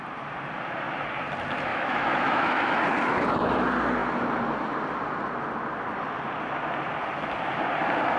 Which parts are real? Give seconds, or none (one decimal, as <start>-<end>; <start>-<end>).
0.0-1.7; 2.8-8.2